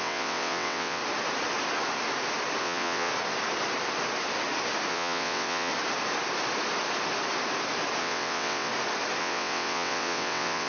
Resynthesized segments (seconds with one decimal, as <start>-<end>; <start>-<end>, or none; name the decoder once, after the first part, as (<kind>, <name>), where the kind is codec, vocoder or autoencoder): 0.0-1.0 (vocoder, WaveNeXt); 2.6-3.1; 4.9-5.7; 8.0-8.7; 9.2-10.7